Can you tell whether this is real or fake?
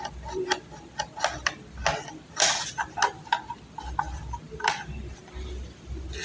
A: real